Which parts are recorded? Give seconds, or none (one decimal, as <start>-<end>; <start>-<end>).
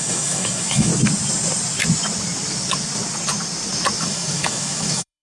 0.9-4.0